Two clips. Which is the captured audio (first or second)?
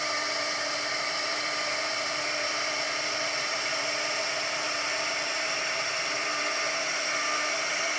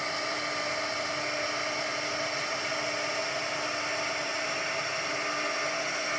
second